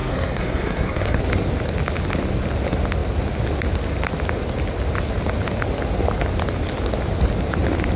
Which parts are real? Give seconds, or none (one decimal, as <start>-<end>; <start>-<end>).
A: 1.2-8.0

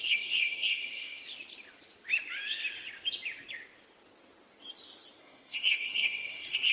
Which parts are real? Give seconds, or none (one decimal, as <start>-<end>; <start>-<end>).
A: 1.2-5.2

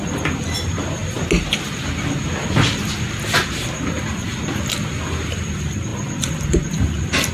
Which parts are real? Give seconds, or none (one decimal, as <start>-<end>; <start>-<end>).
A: 0.0-7.3

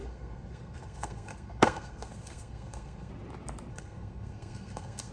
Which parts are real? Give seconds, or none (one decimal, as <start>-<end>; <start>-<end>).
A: 3.1-3.7

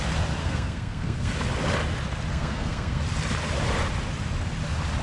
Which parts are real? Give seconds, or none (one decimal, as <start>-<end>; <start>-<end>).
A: 0.0-0.4; 1.3-2.3; 3.0-5.0